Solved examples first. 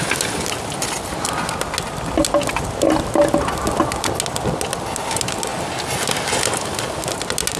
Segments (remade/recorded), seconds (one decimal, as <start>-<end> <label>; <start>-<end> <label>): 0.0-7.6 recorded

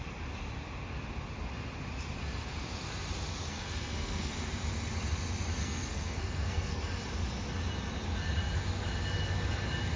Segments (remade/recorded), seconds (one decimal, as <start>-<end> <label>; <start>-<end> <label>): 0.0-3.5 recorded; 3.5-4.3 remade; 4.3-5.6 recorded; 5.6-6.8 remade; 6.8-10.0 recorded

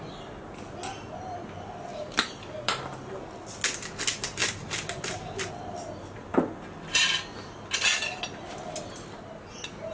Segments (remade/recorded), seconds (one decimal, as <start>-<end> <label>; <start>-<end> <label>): 0.0-1.9 recorded; 1.9-3.2 remade; 3.2-9.9 recorded

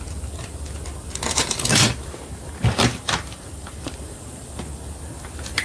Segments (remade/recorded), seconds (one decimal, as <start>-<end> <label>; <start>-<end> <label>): 0.0-1.4 recorded; 1.4-4.4 remade; 4.4-5.6 recorded

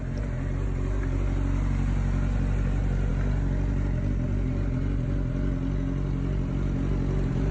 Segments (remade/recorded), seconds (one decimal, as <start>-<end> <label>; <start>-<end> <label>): 0.0-7.5 recorded

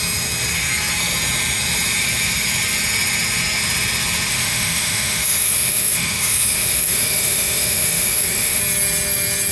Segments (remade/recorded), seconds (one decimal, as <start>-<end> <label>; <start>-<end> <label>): 0.0-4.3 recorded; 4.3-8.6 remade; 8.6-9.5 recorded